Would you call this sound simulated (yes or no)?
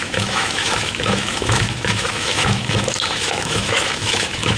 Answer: yes